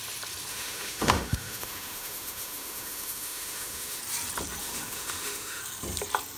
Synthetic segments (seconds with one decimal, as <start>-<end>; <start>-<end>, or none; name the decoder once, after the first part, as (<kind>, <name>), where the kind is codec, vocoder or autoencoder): 0.5-4.0 (autoencoder, DAC-VAE); 4.6-5.6

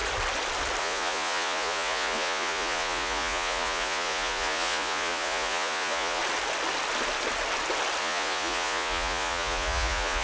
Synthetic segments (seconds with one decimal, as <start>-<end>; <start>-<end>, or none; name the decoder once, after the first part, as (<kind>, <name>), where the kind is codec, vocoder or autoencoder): 0.8-6.2 (vocoder, Vocos); 8.0-10.2

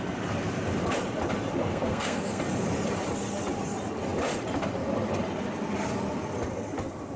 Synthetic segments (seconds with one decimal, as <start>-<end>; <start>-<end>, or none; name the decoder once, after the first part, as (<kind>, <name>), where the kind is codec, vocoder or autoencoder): 1.7-2.4 (codec, SNAC)

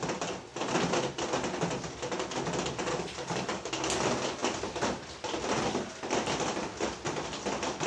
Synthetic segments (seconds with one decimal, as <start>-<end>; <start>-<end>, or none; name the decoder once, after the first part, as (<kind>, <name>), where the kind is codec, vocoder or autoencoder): 2.9-3.7 (codec, DAC)

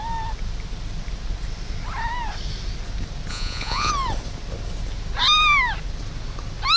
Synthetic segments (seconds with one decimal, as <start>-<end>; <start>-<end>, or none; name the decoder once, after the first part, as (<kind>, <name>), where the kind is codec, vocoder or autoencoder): 3.3-3.9 (vocoder, Vocos)

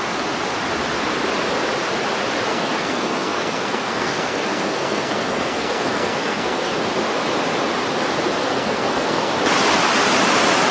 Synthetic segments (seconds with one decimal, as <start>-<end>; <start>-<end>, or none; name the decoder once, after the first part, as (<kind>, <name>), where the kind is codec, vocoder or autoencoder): 2.5-6.7 (codec, SNAC); 8.4-9.3